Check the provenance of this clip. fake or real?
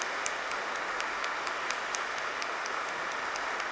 real